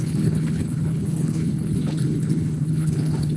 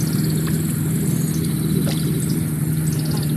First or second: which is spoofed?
first